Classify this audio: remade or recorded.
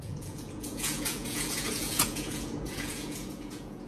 remade